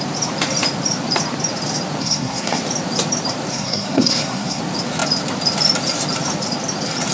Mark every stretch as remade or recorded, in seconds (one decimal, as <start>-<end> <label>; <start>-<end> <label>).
0.0-2.0 recorded; 2.0-2.6 remade; 2.6-3.5 recorded; 3.5-4.6 remade; 4.6-7.1 recorded